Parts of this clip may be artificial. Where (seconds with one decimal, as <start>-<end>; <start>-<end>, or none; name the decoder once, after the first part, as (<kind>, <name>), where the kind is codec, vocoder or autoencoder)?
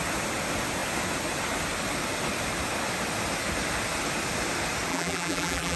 4.9-5.8 (vocoder, BigVGAN v2)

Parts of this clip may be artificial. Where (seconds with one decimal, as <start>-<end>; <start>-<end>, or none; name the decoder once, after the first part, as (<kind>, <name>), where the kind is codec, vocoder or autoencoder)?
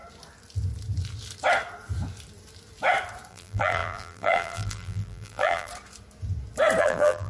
3.3-5.7 (vocoder, BigVGAN v2); 6.8-7.3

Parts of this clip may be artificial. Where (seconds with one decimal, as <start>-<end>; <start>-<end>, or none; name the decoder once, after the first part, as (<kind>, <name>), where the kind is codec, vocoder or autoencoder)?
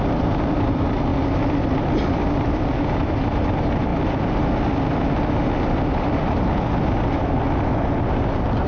none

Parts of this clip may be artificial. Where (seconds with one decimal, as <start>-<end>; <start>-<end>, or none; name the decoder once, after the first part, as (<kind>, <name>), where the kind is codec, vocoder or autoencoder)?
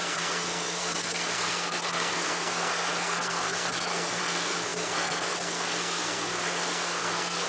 0.0-7.5 (codec, SNAC)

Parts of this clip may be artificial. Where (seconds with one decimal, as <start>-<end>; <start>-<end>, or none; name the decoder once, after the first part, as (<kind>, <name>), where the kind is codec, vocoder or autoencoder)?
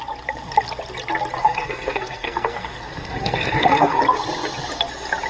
1.4-4.0 (codec, SNAC)